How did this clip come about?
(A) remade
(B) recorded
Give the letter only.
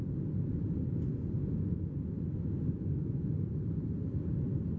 B